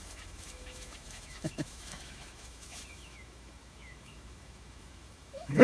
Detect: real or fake fake